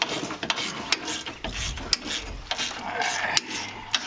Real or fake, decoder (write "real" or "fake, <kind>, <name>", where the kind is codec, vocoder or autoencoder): real